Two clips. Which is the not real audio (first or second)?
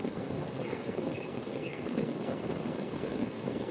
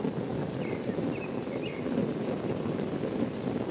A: first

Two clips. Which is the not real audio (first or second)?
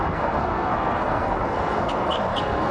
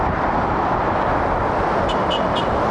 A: first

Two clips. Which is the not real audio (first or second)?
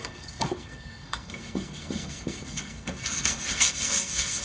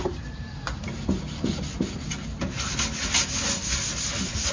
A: first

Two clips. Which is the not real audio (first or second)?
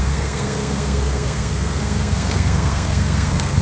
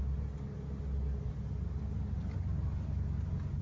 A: first